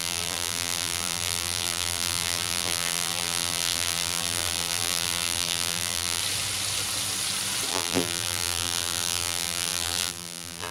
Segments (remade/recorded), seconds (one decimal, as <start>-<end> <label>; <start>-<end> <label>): 0.0-6.2 remade; 6.2-7.7 recorded; 7.7-10.7 remade